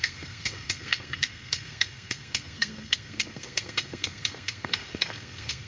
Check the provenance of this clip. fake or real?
fake